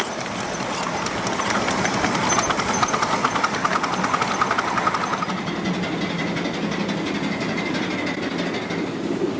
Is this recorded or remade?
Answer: recorded